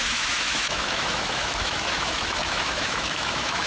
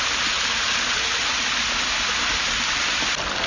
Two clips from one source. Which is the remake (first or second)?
first